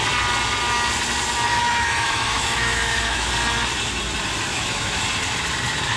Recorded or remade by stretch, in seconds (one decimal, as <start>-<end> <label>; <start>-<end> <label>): 0.0-1.5 recorded; 1.5-3.3 remade; 3.3-4.5 recorded; 4.5-5.0 remade; 5.0-6.0 recorded